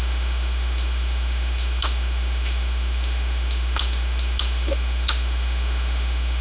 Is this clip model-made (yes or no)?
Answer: yes